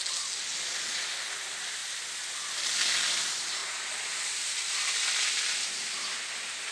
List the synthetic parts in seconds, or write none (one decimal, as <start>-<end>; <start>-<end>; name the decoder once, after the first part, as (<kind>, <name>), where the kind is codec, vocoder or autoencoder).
none